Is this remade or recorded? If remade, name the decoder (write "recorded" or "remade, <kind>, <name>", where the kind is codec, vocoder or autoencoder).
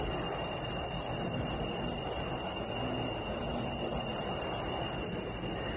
remade, vocoder, BigVGAN v2